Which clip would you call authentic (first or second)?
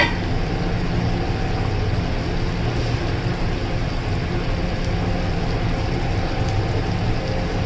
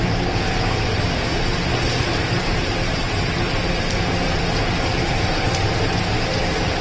first